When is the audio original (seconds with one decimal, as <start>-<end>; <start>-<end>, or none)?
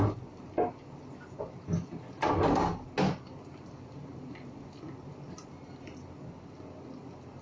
0.0-7.4